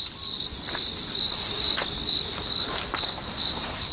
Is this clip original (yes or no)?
yes